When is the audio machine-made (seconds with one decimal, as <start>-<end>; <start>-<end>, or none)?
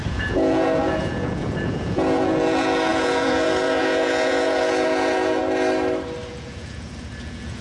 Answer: 0.0-5.4; 6.3-7.6